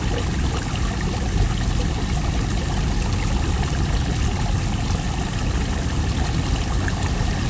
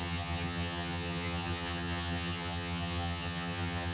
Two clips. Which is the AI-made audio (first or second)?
second